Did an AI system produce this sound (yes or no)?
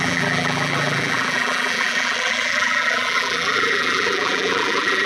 yes